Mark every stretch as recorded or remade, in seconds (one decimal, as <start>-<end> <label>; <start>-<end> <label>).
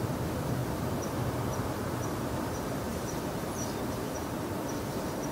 0.0-0.6 remade; 0.6-1.6 recorded; 1.6-5.3 remade